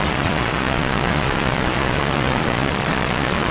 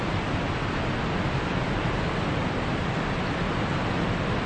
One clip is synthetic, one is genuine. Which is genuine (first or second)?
second